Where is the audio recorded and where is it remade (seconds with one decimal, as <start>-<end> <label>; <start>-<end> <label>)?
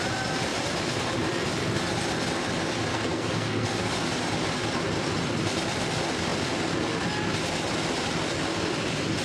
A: 0.0-2.9 recorded; 2.9-3.9 remade; 3.9-9.2 recorded